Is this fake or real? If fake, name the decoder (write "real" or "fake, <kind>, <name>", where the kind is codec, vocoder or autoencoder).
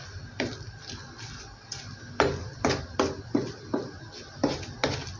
real